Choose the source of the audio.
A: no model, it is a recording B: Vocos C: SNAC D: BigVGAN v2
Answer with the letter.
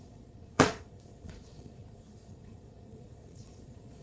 B